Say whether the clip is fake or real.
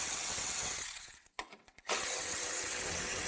fake